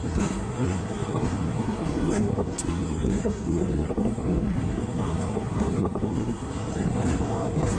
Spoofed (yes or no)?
yes